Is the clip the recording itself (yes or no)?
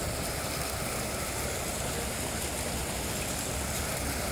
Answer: yes